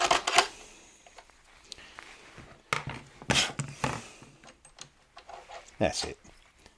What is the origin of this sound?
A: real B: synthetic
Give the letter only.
A